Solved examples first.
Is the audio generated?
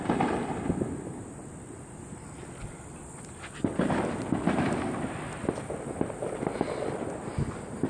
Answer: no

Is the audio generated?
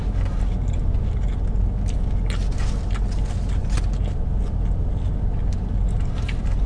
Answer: no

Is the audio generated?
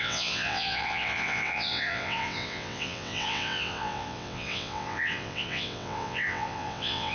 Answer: yes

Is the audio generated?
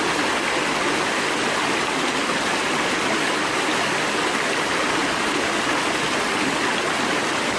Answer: no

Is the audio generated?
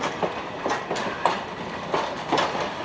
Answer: no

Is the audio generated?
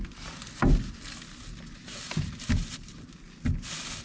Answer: no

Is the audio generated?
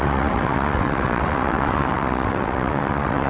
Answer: yes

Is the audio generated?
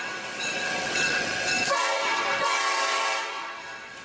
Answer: yes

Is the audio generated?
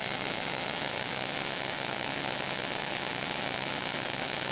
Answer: yes